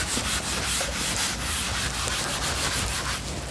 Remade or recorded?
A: recorded